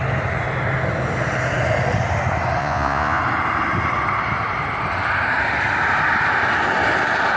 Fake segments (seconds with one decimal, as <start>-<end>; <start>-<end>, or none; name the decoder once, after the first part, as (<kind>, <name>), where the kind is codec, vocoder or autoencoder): 2.6-3.2 (vocoder, Vocos)